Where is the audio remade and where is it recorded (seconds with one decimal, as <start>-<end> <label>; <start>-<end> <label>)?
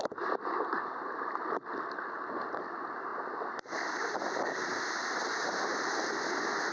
0.0-6.7 recorded